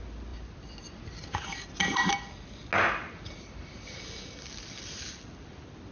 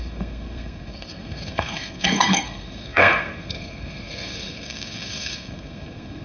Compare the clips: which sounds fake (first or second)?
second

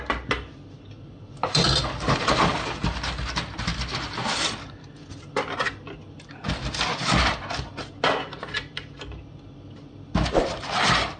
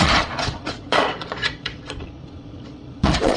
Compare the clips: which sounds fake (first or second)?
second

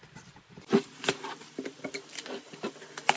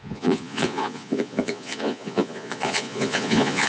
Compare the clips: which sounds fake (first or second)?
second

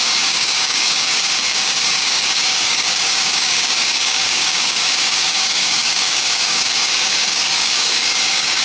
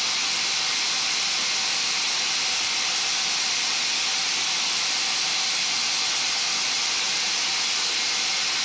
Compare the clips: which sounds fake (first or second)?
first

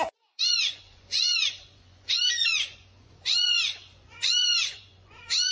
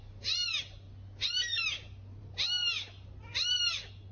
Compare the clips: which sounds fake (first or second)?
first